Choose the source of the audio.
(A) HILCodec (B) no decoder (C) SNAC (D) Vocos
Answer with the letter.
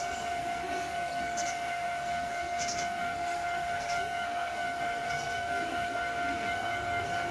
C